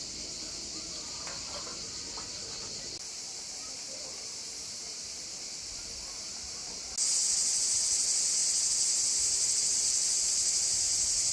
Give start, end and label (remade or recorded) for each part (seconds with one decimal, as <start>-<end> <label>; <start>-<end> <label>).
0.0-11.3 recorded